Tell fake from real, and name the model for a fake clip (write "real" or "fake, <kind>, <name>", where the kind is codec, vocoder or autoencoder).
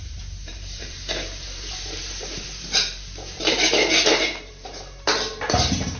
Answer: fake, vocoder, BigVGAN v2